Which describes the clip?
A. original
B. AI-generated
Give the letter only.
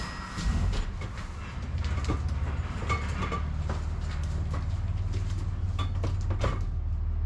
A